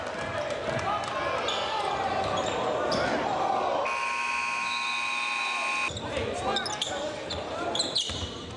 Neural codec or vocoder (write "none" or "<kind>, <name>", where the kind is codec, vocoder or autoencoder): none